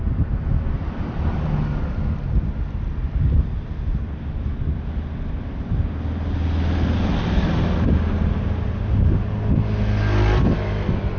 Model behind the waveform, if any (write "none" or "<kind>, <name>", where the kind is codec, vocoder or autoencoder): none